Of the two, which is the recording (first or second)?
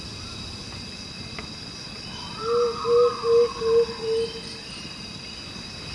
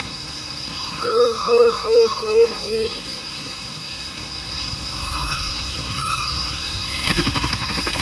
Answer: first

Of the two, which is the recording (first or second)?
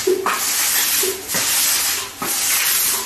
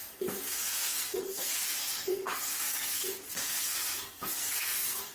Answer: first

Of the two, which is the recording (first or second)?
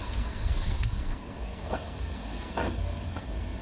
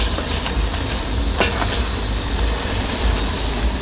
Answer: second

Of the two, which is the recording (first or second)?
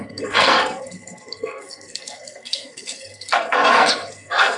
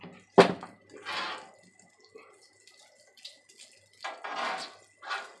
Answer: second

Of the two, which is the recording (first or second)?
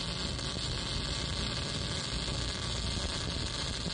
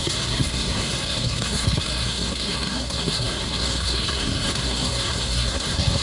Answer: first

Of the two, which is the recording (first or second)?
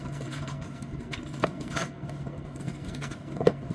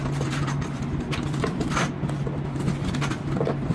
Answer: second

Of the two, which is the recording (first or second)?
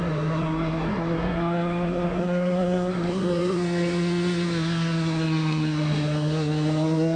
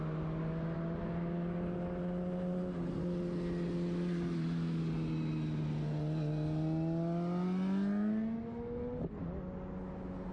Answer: second